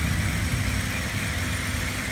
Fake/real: real